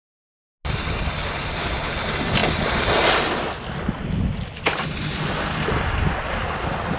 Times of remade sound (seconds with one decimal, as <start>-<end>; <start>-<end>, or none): none